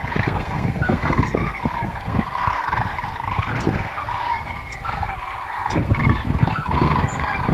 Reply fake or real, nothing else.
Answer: fake